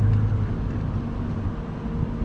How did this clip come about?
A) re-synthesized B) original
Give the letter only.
B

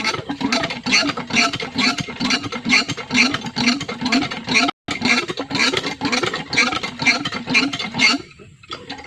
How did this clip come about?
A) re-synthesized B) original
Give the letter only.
B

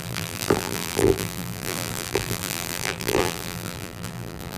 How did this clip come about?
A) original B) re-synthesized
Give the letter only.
B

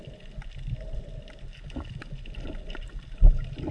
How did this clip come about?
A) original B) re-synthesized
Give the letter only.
A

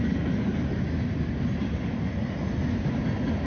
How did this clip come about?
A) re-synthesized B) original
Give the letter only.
B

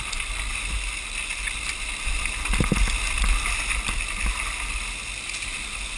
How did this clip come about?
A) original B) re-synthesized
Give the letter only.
A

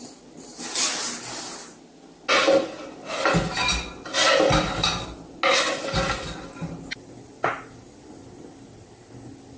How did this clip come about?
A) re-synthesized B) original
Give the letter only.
B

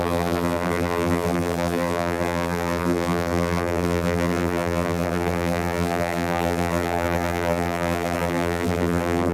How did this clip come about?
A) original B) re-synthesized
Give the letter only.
B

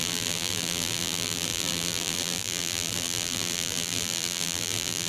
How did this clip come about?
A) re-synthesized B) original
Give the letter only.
A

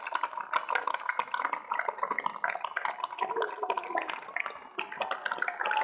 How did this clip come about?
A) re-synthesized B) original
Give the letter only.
B